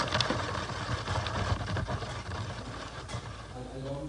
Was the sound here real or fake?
real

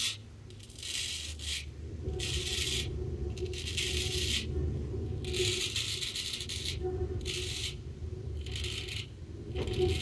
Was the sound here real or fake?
real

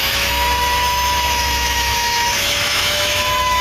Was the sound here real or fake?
fake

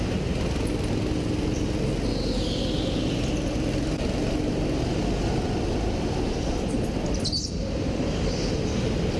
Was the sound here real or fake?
real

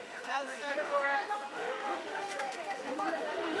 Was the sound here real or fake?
fake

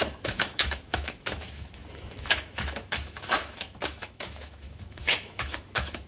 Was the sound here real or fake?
fake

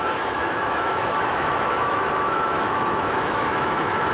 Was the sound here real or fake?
fake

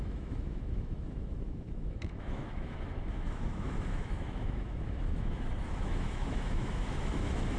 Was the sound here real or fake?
fake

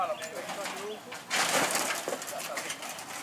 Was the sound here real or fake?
real